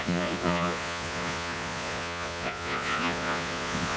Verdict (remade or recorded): remade